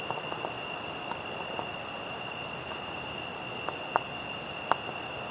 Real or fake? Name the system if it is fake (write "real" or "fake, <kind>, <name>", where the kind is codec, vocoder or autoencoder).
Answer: real